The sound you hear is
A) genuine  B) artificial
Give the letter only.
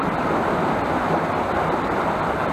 A